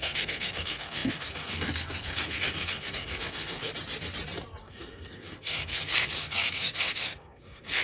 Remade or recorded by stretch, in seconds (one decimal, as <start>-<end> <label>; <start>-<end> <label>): 0.0-3.7 remade; 3.7-4.6 recorded; 4.6-7.8 remade